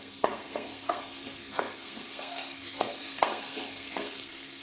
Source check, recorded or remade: remade